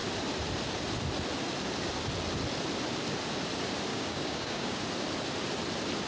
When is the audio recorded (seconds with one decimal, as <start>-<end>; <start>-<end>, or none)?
0.0-3.9; 4.8-6.1